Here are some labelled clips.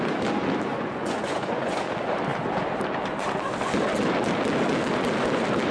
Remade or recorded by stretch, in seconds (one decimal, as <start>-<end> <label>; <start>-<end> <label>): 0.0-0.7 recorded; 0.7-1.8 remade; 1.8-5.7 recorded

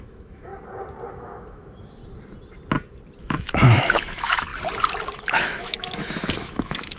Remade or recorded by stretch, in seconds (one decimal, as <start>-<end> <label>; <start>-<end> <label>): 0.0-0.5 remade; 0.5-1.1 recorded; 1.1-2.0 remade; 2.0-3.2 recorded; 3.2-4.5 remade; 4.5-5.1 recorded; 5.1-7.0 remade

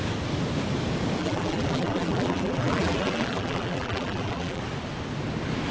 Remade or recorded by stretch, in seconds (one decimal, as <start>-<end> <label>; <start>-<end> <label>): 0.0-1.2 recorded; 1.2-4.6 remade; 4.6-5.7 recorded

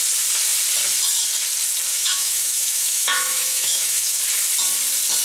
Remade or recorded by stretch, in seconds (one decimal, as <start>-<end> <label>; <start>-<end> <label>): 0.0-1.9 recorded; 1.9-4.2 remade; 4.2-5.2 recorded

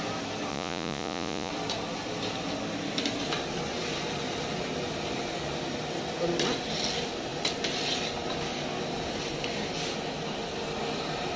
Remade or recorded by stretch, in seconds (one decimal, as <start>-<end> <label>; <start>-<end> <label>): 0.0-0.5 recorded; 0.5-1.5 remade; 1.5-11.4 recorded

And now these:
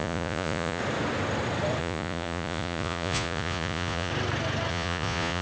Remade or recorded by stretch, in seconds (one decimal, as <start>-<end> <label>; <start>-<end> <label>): 0.0-0.8 remade; 0.8-1.8 recorded; 1.8-4.1 remade; 4.1-4.7 recorded; 4.7-5.4 remade

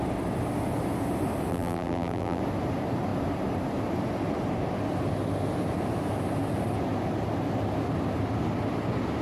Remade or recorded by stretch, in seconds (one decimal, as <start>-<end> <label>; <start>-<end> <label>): 0.0-1.5 recorded; 1.5-2.4 remade; 2.4-9.2 recorded